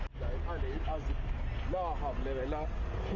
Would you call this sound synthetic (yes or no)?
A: no